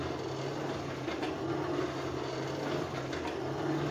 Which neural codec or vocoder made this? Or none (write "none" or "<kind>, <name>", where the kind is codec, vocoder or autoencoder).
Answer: none